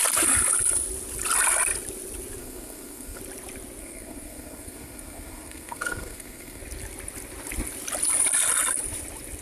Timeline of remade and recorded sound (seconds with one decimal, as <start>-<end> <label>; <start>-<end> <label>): 0.0-2.4 recorded; 2.4-3.2 remade; 3.2-3.8 recorded; 3.8-6.6 remade; 6.6-9.4 recorded